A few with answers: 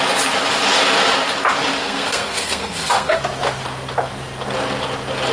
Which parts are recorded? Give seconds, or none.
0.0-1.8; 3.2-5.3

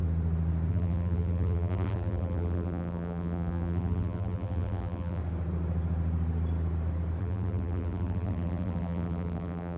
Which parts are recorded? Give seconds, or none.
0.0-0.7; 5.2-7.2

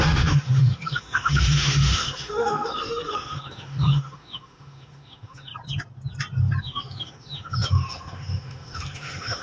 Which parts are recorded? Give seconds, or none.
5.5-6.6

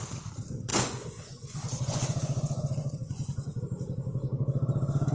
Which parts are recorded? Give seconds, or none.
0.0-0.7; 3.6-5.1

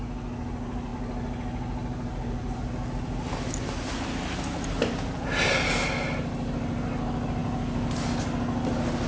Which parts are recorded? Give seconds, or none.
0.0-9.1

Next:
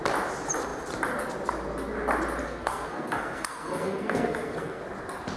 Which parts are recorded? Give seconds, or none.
0.0-2.4; 4.8-5.4

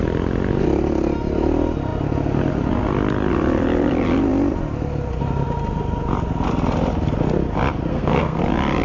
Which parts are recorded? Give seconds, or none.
0.0-7.9; 8.4-8.8

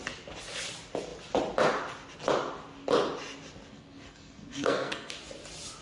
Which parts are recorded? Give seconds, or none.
0.0-3.7; 5.2-5.8